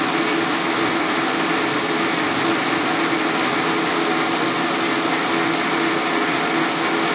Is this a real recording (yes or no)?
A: yes